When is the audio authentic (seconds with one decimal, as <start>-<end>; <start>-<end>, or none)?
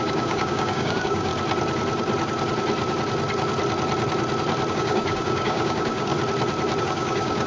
1.3-4.7; 6.1-6.8